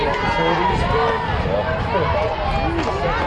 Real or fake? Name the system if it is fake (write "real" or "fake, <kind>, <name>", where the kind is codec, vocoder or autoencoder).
real